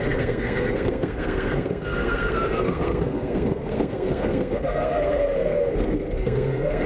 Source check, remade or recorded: remade